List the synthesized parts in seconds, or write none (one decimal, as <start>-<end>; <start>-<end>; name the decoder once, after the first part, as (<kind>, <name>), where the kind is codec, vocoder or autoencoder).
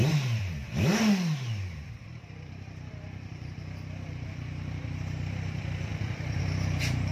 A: 0.0-7.1 (vocoder, BigVGAN v2)